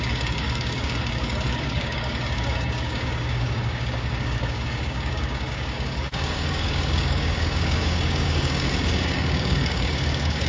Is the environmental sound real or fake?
fake